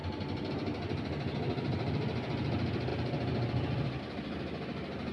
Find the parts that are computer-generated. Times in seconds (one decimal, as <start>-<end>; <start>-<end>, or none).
none